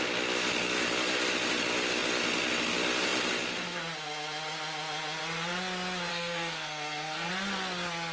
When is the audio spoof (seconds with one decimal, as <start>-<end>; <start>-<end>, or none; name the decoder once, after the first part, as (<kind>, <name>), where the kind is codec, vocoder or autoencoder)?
6.1-7.3 (codec, SNAC)